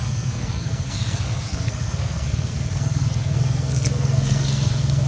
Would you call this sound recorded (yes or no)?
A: no